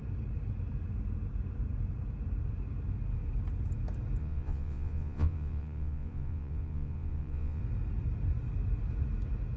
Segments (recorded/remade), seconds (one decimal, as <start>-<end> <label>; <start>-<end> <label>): 0.0-4.2 recorded; 4.2-7.6 remade; 7.6-9.6 recorded